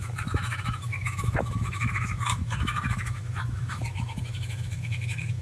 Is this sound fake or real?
fake